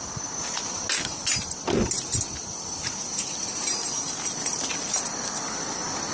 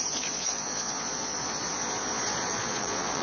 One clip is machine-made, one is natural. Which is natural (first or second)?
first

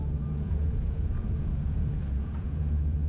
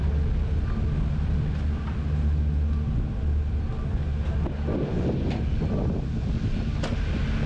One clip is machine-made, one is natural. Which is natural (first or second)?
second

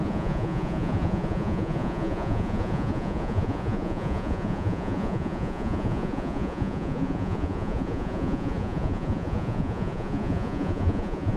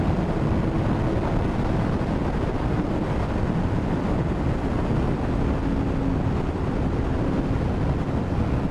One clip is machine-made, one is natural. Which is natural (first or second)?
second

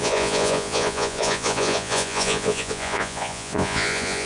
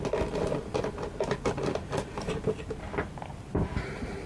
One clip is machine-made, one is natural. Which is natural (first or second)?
second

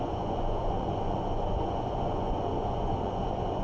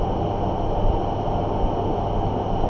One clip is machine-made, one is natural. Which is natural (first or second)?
second